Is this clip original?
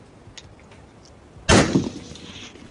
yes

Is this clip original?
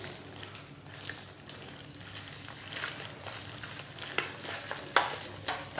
yes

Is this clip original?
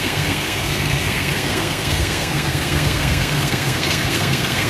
no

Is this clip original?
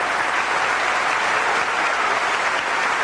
yes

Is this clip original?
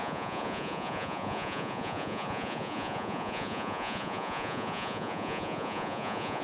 no